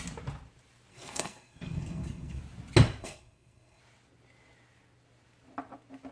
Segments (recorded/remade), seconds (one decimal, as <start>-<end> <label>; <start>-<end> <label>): 0.0-0.9 recorded; 0.9-2.4 remade; 2.4-3.0 recorded; 3.0-3.8 remade; 3.8-6.1 recorded